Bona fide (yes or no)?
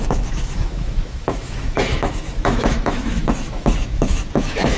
no